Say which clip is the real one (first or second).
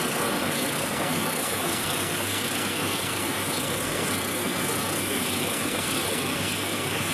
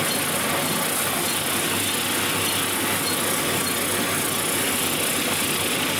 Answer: second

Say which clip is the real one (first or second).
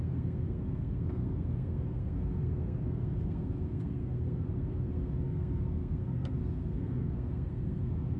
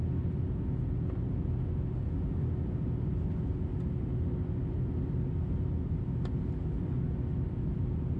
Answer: second